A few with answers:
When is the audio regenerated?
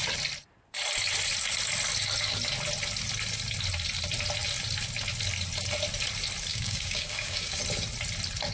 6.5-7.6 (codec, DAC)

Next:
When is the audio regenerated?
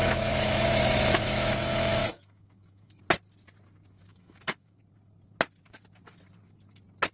0.0-1.5 (autoencoder, DAC-VAE); 2.0-3.0; 4.1-4.8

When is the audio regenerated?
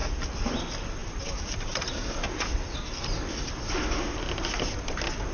none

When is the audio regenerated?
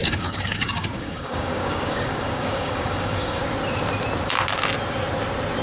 0.0-3.4 (codec, DAC)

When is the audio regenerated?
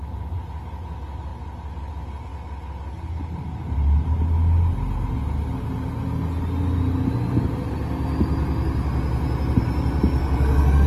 10.2-10.9 (codec, SNAC)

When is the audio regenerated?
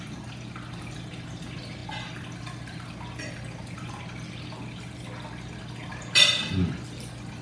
none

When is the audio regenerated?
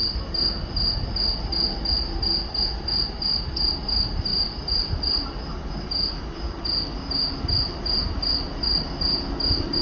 none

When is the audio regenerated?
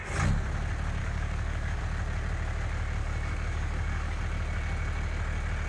1.0-1.8 (codec, DAC); 3.0-4.2